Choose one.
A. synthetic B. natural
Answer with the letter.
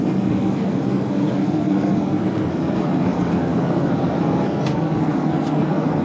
A